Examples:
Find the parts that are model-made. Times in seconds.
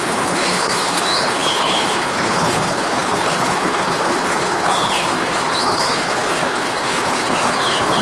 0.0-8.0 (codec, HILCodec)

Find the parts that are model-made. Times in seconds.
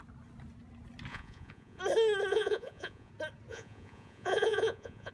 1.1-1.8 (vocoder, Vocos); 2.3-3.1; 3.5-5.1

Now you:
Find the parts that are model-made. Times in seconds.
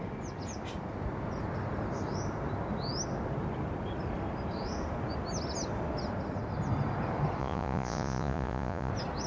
7.4-8.9 (vocoder, Vocos)